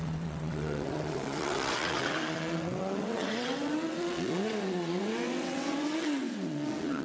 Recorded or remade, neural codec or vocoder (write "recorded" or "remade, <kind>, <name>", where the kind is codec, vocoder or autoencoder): remade, vocoder, WaveNeXt